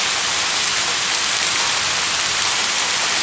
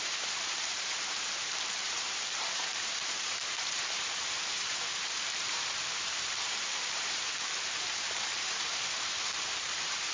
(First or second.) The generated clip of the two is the second